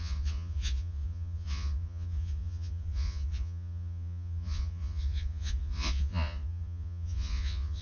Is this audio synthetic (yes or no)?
yes